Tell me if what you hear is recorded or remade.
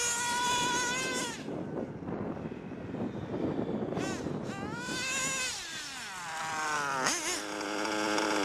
recorded